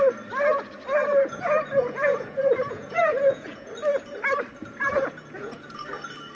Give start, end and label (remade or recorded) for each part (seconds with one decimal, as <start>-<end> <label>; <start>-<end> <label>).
0.0-1.1 recorded; 1.1-3.7 remade; 3.7-4.6 recorded; 4.6-5.8 remade; 5.8-6.3 recorded